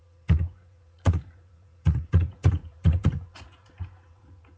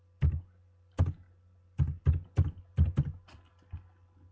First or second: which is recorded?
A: second